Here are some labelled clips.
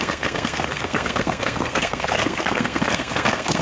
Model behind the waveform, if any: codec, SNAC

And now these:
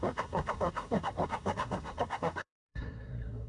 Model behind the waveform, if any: codec, SNAC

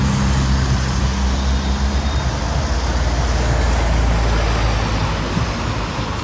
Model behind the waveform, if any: none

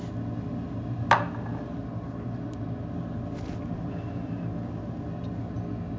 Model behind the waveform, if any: none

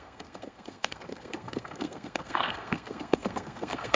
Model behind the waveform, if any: codec, SNAC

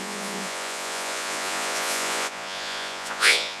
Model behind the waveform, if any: vocoder, Vocos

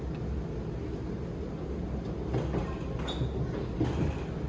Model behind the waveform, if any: none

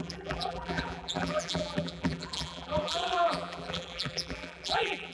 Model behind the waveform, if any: vocoder, BigVGAN v2